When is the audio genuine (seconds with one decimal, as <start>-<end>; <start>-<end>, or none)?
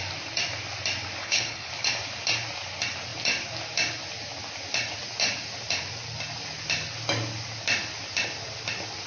0.0-1.2; 1.7-9.1